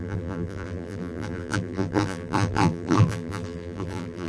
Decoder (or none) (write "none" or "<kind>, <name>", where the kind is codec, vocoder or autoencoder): vocoder, BigVGAN v2